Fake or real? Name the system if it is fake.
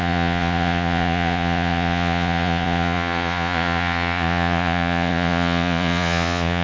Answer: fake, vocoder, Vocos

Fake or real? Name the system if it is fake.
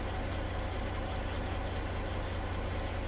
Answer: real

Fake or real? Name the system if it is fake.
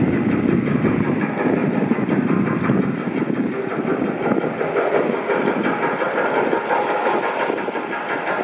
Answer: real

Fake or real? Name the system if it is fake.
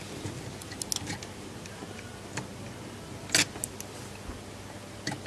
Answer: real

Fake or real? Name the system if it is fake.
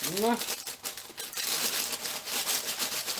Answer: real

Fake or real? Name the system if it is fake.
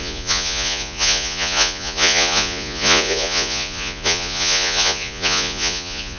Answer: fake, vocoder, Vocos